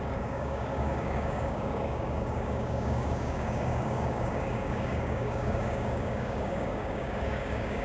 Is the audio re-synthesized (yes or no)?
yes